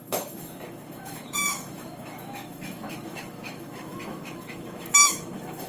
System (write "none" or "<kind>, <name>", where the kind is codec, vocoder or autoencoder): autoencoder, DAC-VAE